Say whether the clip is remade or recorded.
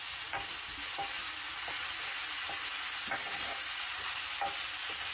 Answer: recorded